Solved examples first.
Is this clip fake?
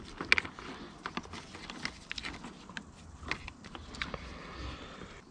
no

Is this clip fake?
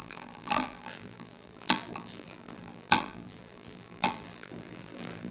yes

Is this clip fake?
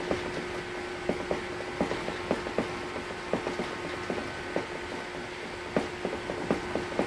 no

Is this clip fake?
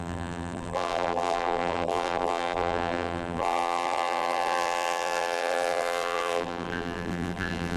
yes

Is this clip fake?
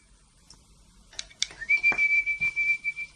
yes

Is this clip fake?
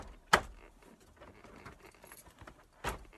no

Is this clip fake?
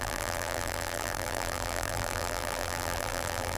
yes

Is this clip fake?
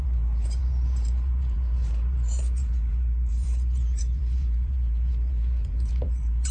yes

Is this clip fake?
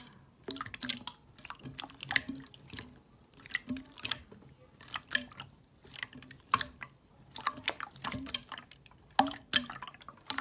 no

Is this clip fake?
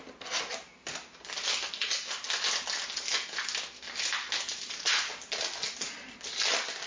no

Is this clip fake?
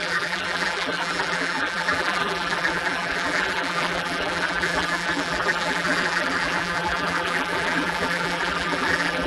yes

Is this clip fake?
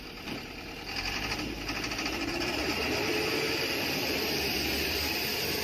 yes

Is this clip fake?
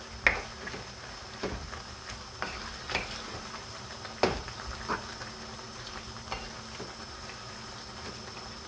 no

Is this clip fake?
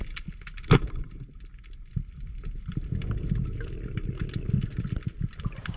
no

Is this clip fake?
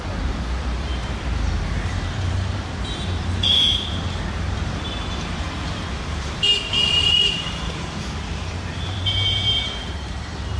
yes